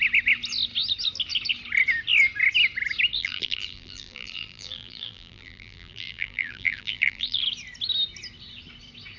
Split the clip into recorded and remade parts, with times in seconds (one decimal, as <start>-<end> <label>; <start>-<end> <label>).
0.0-3.2 recorded; 3.2-7.4 remade; 7.4-9.2 recorded